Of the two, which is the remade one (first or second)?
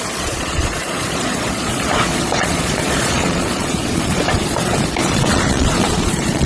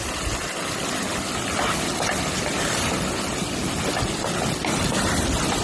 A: first